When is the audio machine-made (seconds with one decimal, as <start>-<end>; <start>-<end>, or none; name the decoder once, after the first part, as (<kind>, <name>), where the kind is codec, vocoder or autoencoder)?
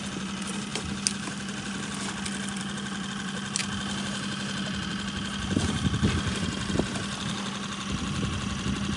none